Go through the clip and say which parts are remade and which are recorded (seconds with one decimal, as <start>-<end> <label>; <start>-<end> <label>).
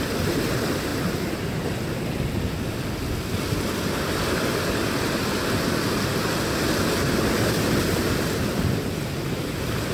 0.0-9.9 recorded